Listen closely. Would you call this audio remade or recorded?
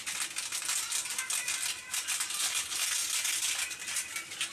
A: recorded